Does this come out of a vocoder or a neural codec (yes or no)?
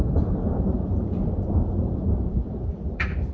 no